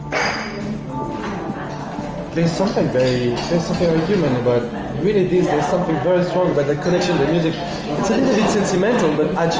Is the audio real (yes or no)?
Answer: yes